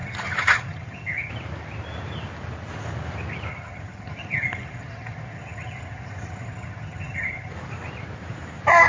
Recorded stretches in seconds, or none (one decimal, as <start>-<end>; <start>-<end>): 1.3-3.5; 7.5-8.9

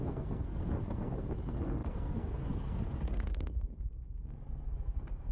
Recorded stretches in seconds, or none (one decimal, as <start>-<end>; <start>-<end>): none

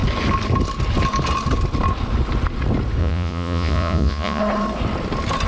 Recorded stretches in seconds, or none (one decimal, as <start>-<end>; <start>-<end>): 0.0-3.0; 4.4-5.5

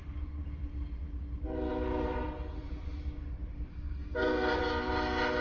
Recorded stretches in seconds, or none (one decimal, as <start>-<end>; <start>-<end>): 0.0-3.7; 4.6-5.4

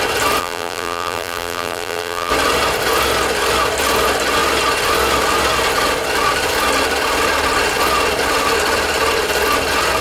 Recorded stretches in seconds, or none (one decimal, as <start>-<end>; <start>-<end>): 0.0-0.4; 2.3-10.0

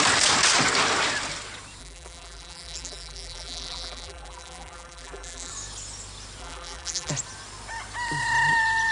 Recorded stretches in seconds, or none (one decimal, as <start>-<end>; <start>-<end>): 0.0-1.8; 5.5-6.4; 7.1-8.9

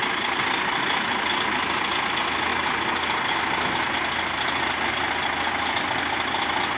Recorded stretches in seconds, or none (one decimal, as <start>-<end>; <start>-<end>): 0.0-6.8